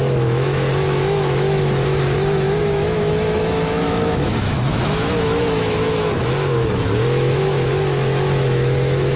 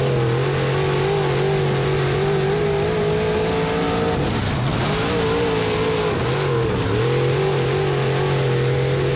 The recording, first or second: second